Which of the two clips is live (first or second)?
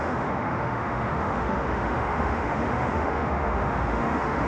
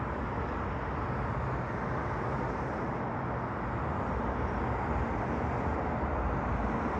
second